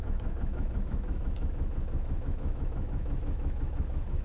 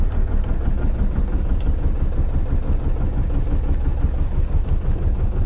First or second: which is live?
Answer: second